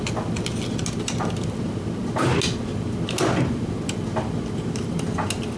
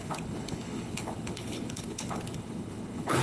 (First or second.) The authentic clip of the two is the first